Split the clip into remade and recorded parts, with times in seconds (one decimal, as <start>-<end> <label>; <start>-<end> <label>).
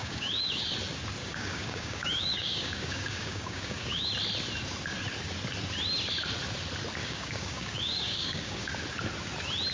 0.0-0.7 remade; 0.7-1.2 recorded; 1.2-4.1 remade; 4.1-7.0 recorded; 7.0-8.7 remade; 8.7-9.7 recorded